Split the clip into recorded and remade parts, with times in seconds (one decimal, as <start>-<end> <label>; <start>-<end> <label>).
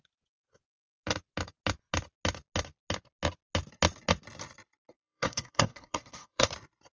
0.0-4.9 recorded; 4.9-6.5 remade; 6.5-7.0 recorded